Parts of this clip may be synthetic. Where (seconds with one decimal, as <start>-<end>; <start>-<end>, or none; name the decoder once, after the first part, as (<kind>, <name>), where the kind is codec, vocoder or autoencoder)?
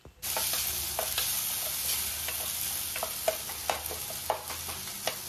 none